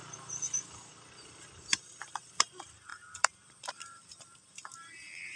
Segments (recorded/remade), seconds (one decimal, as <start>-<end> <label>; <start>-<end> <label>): 0.0-5.4 remade